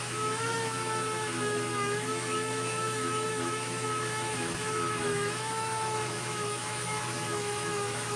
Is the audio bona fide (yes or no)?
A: no